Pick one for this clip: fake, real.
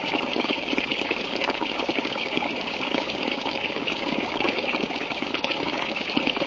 fake